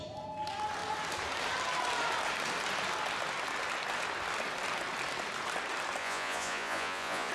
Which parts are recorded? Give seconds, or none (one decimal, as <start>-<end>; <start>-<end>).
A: 0.0-6.0